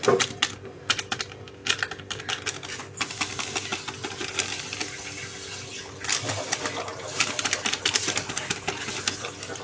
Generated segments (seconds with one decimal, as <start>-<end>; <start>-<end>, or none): none